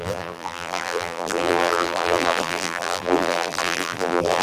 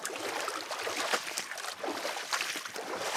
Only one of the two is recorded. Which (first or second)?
second